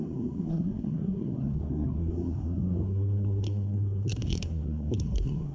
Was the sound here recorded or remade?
remade